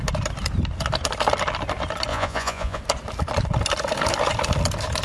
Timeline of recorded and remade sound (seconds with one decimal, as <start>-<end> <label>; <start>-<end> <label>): 0.0-2.1 recorded; 2.1-2.8 remade; 2.8-5.0 recorded